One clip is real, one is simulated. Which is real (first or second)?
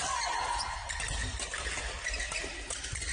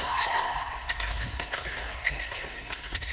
first